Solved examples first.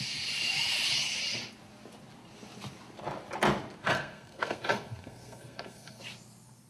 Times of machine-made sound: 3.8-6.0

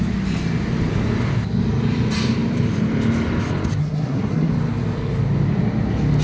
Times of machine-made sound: 3.8-4.5

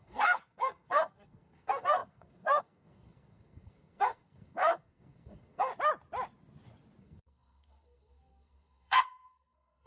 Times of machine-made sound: 0.0-5.7; 7.0-9.9

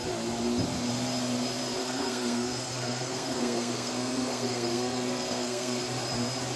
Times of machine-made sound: 1.8-5.8

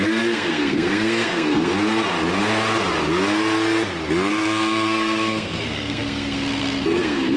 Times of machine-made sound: 0.0-1.7; 4.3-7.4

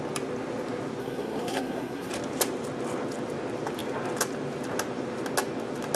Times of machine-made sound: 1.0-2.1